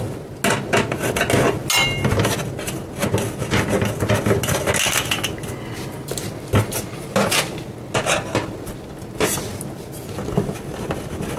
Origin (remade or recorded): recorded